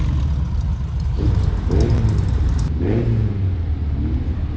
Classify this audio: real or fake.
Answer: real